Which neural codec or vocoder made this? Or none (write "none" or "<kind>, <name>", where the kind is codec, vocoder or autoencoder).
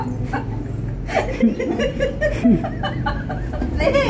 none